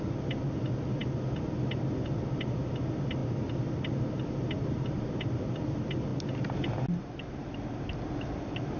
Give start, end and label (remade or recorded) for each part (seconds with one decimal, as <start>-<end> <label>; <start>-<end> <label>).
0.0-8.8 recorded